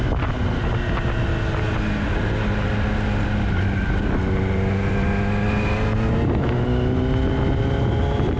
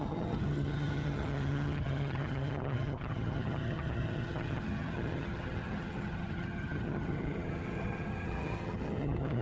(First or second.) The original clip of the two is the first